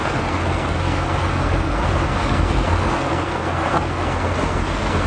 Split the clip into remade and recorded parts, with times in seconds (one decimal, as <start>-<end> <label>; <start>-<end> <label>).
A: 0.0-5.1 remade